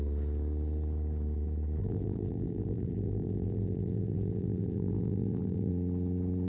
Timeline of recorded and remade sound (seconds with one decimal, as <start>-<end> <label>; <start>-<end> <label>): 0.0-1.8 recorded; 1.8-5.7 remade; 5.7-6.5 recorded